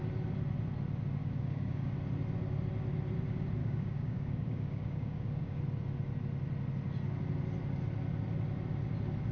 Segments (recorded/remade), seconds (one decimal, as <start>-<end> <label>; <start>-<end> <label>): 0.0-1.2 recorded; 1.2-1.9 remade; 1.9-3.6 recorded; 3.6-5.6 remade; 5.6-9.3 recorded